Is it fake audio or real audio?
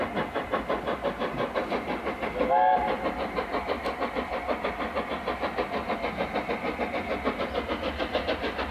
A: real